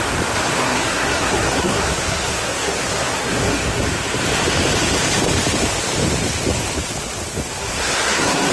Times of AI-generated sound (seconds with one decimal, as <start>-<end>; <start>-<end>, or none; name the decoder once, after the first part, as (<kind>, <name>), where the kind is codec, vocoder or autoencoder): 0.5-3.8 (codec, SNAC); 7.6-8.5